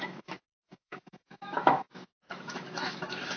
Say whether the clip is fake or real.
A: fake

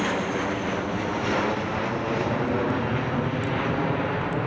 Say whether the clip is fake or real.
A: real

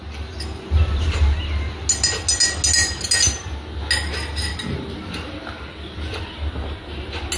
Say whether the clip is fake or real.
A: real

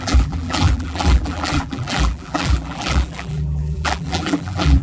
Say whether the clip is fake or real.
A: fake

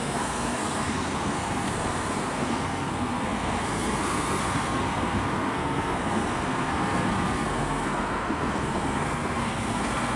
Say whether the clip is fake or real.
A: fake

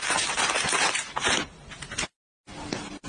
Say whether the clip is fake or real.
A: real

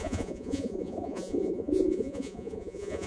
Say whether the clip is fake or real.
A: fake